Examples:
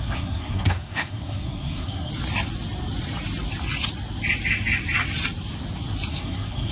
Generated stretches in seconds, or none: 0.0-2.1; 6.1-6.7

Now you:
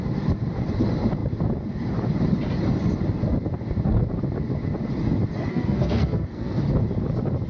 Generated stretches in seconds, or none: 5.5-6.6

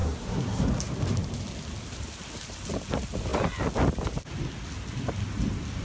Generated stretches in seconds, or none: 0.0-0.7

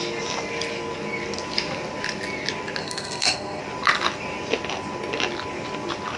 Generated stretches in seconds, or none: 2.8-3.6

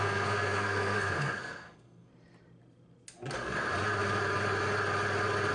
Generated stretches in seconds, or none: 0.0-2.1

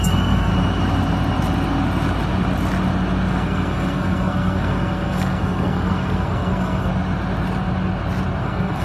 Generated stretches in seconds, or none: 0.0-0.5; 3.3-6.9; 8.4-8.8

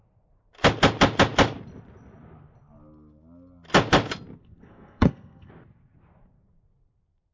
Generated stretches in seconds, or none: 4.4-5.5

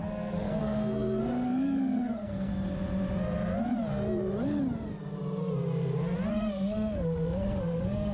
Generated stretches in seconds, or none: 0.0-2.5; 6.3-8.1